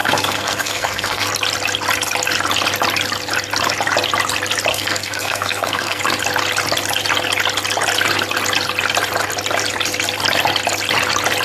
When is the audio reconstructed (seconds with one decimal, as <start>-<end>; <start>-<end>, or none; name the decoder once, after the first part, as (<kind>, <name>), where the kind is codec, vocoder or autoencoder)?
0.0-1.3 (codec, SNAC); 4.7-6.0